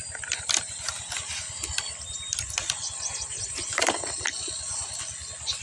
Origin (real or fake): real